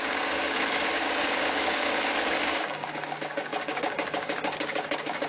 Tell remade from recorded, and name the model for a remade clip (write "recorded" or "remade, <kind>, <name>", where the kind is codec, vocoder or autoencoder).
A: remade, codec, DAC